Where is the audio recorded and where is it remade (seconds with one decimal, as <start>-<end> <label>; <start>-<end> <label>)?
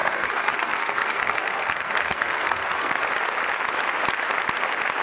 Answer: 0.0-3.0 remade; 3.0-5.0 recorded